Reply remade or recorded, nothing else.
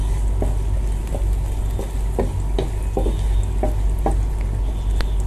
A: recorded